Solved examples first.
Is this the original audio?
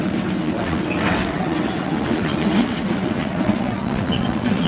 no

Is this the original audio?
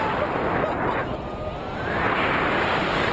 yes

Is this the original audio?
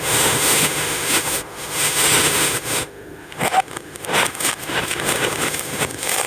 no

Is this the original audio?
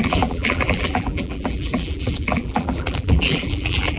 no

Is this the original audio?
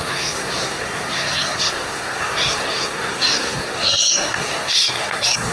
no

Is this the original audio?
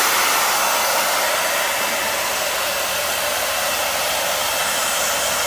yes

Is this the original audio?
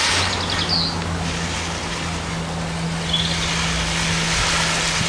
yes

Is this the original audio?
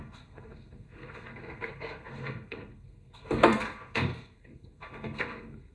no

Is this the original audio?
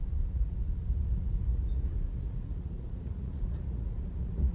no